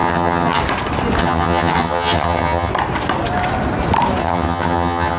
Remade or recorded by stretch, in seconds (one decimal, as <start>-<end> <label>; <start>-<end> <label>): 0.0-0.6 remade; 0.6-1.2 recorded; 1.2-2.7 remade; 2.7-4.2 recorded; 4.2-5.2 remade